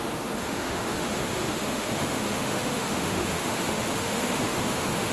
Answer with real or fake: fake